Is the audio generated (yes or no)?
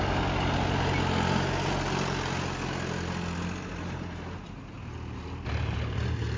no